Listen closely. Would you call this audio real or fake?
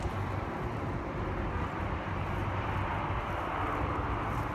real